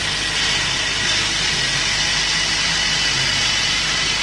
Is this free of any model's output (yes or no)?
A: yes